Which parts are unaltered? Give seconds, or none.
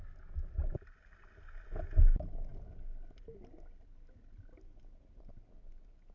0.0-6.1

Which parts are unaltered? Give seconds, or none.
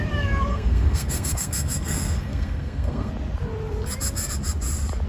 0.0-0.5; 3.1-5.1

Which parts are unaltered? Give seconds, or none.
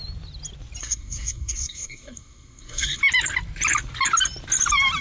0.0-0.8; 3.0-5.0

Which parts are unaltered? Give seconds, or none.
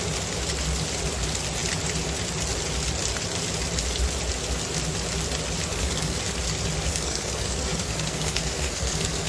0.0-5.7; 6.2-6.9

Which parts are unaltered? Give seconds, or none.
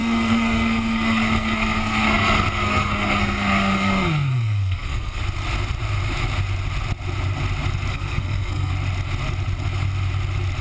5.2-7.9; 8.7-10.6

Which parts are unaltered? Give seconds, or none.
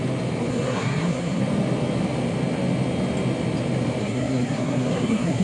0.0-0.5; 1.4-4.0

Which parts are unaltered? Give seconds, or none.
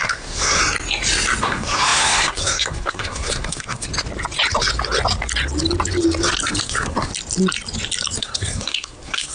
0.6-1.4; 3.9-6.6; 7.1-8.2